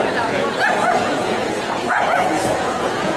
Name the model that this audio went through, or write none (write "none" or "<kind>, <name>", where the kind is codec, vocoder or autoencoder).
vocoder, Vocos